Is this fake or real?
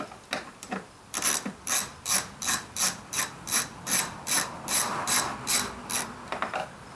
fake